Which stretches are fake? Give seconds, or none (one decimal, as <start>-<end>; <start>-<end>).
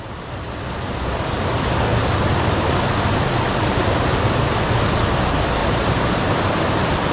5.6-6.5